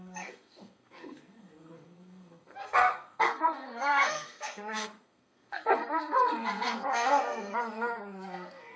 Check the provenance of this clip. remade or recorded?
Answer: remade